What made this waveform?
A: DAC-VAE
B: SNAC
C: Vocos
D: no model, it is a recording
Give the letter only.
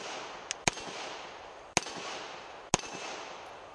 D